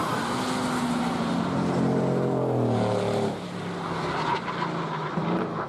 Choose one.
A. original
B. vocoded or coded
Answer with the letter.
A